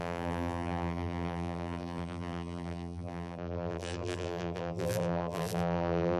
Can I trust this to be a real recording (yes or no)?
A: no